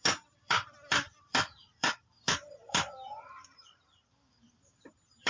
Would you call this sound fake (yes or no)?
yes